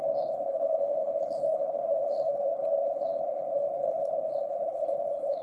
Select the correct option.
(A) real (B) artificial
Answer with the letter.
B